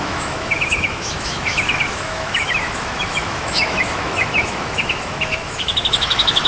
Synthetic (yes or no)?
yes